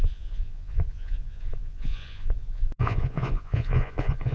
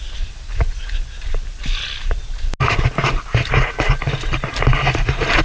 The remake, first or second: first